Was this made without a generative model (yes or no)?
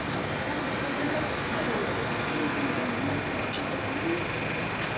yes